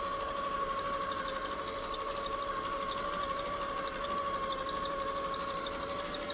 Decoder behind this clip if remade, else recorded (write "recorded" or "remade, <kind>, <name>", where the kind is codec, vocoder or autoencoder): recorded